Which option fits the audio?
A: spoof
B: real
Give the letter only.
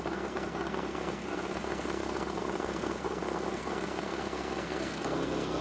A